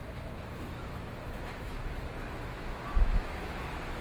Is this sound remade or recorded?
remade